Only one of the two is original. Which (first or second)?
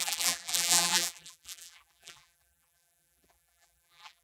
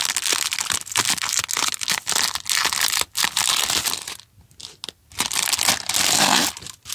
second